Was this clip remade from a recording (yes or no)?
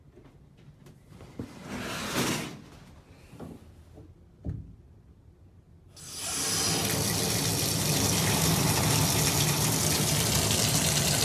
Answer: no